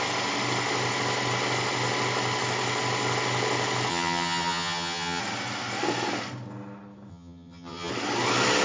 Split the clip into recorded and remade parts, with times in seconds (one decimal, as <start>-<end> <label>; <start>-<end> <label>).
0.0-3.9 recorded; 3.9-5.2 remade; 5.2-7.1 recorded; 7.1-7.9 remade; 7.9-8.6 recorded